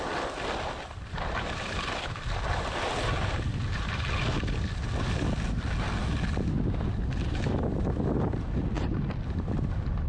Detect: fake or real real